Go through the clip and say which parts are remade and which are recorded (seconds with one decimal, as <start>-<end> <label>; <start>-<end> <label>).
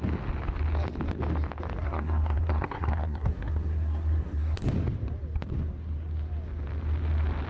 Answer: 0.0-1.8 recorded; 1.8-4.6 remade; 4.6-7.5 recorded